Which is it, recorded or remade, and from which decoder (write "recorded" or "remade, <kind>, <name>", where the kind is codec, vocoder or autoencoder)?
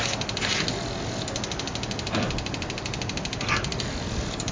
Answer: recorded